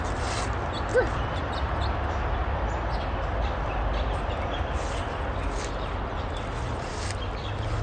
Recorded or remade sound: recorded